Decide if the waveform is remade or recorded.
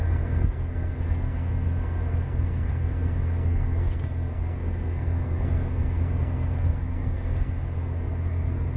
remade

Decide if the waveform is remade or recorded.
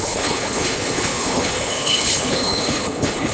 remade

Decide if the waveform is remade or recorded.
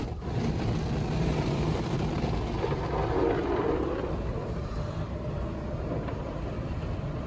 recorded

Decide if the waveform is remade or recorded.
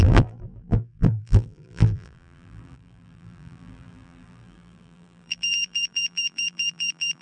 remade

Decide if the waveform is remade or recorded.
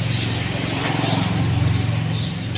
recorded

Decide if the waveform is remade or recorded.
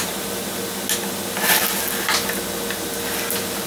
recorded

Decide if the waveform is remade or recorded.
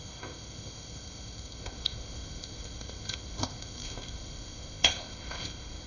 remade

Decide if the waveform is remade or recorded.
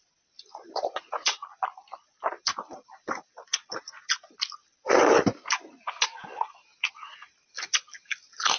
recorded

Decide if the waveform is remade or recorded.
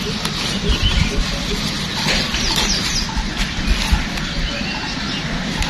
recorded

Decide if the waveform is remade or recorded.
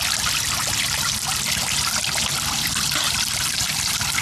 recorded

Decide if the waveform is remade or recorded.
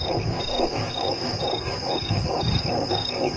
remade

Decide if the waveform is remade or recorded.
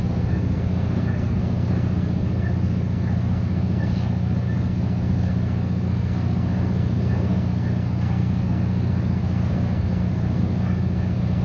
remade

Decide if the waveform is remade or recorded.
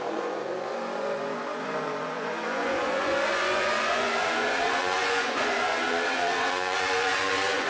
remade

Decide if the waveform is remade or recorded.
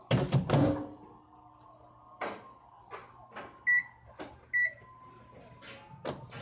recorded